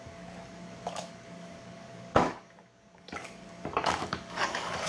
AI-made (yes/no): yes